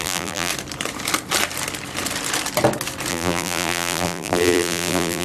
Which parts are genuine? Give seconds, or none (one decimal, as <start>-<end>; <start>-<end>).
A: 0.5-3.1